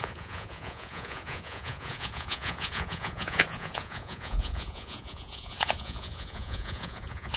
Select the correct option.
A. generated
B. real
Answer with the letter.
A